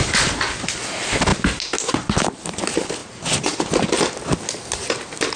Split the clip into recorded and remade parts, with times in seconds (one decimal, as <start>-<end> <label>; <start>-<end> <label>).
0.0-5.4 recorded